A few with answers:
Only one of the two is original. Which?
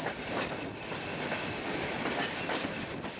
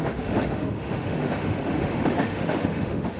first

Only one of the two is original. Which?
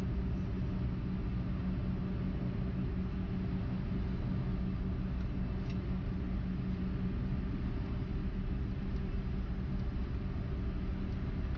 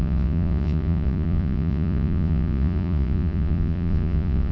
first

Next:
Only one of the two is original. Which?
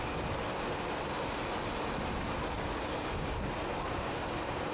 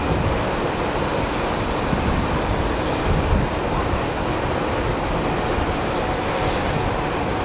first